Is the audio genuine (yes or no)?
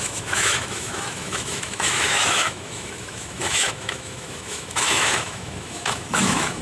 no